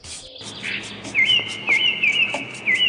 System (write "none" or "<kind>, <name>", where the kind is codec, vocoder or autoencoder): none